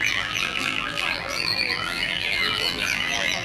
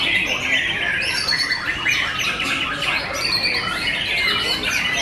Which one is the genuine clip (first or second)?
second